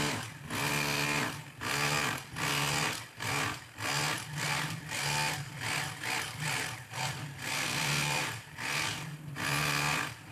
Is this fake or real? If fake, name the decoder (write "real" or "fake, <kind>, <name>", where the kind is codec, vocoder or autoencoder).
real